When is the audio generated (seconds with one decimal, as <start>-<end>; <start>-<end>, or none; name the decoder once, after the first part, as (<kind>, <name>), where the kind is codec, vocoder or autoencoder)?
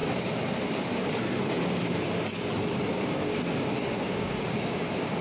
2.9-4.8 (codec, DAC)